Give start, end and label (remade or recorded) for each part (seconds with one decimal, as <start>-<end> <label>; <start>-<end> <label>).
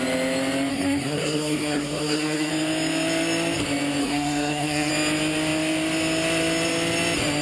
0.0-0.7 recorded; 0.7-2.5 remade; 2.5-4.0 recorded; 4.0-4.9 remade; 4.9-7.4 recorded